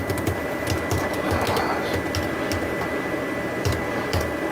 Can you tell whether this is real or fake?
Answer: real